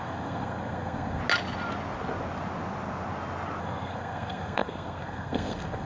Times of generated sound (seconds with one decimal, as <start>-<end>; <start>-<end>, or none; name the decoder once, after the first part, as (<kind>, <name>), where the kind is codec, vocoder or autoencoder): 0.0-1.2 (codec, SNAC); 3.6-5.8